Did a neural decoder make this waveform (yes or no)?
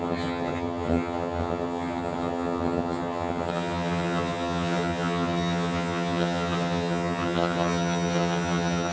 yes